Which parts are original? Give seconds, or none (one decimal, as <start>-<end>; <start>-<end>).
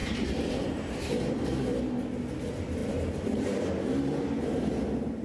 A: 1.8-2.8; 3.7-5.2